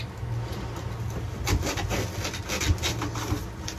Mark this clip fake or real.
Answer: real